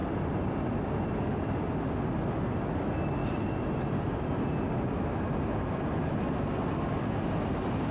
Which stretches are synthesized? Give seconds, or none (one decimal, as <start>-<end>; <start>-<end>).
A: none